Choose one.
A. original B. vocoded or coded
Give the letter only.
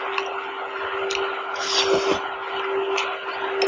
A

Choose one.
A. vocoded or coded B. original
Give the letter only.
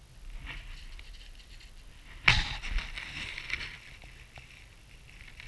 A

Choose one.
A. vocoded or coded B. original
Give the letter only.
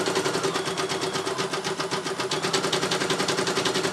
B